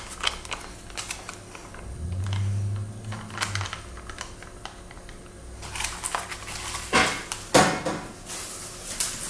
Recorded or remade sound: recorded